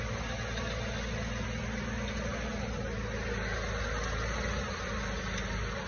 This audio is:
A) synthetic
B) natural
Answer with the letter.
B